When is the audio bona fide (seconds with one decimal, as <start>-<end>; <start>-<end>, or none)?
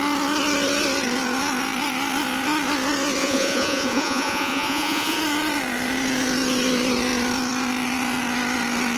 0.0-3.2; 5.2-9.0